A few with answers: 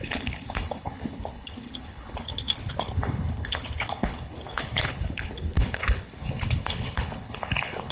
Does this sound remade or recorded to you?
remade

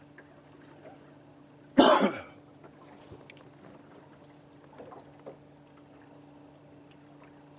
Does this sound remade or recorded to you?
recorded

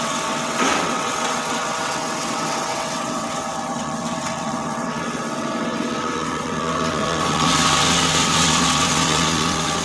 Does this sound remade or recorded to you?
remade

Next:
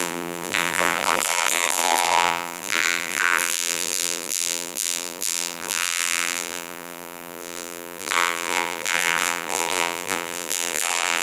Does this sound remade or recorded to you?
remade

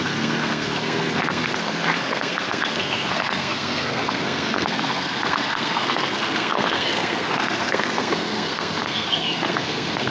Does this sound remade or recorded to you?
remade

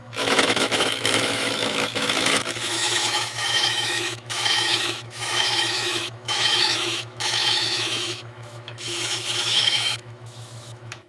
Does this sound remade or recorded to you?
remade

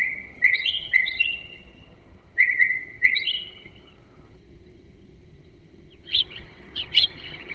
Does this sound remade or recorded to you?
remade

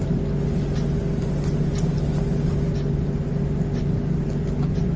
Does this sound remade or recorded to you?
recorded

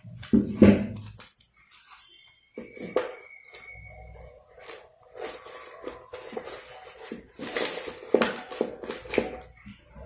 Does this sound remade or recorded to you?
recorded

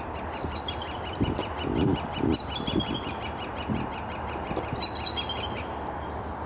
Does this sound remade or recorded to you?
recorded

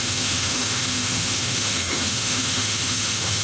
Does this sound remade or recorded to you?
remade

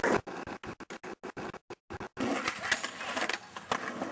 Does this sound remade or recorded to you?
recorded